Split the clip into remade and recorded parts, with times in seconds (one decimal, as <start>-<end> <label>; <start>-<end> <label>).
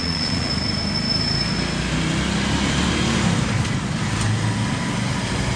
0.0-0.5 remade; 0.5-5.6 recorded